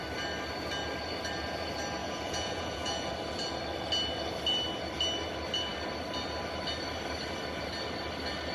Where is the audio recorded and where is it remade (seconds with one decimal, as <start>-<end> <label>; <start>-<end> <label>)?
0.0-2.0 recorded; 2.0-3.1 remade; 3.1-8.5 recorded